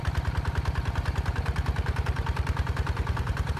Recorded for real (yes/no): no